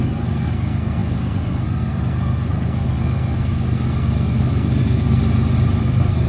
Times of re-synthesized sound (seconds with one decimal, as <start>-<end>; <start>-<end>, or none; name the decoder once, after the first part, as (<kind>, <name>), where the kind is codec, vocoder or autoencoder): 0.0-5.2 (codec, SNAC); 5.8-6.3